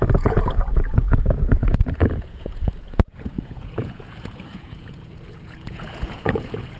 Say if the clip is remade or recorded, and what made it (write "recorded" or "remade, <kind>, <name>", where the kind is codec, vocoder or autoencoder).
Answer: remade, vocoder, Vocos